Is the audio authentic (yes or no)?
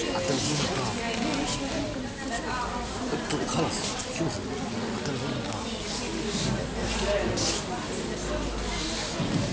yes